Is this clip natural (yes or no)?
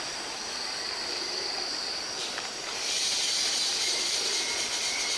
yes